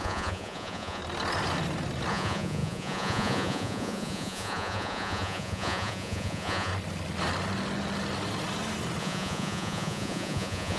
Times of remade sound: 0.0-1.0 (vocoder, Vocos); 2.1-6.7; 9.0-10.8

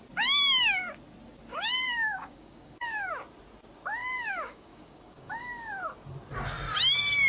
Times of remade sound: 1.5-3.1 (codec, DAC); 4.0-5.7

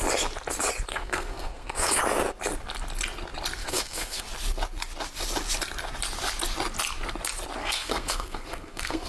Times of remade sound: 0.9-2.0 (codec, SNAC); 3.6-4.2; 7.6-9.1